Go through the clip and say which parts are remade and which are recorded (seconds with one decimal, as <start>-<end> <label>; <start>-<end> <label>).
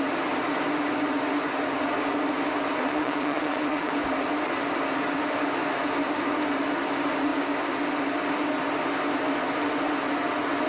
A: 0.0-2.8 recorded; 2.8-3.9 remade; 3.9-10.7 recorded